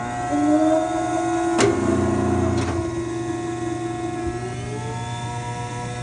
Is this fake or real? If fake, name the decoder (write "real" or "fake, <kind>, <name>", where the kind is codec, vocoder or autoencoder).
real